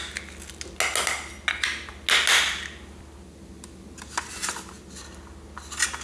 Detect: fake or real real